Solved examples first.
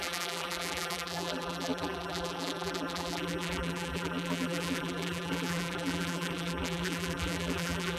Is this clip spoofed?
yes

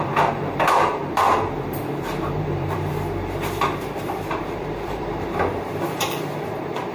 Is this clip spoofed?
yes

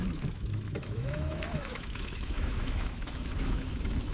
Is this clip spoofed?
yes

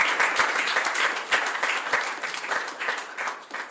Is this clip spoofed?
no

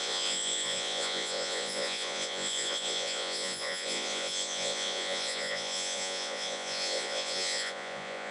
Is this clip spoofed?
yes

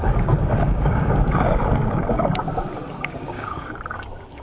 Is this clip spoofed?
yes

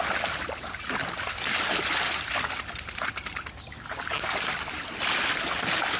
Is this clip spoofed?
no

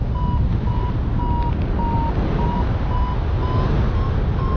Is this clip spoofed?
no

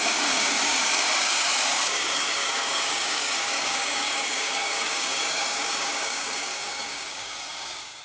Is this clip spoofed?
yes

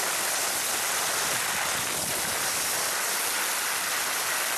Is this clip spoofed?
no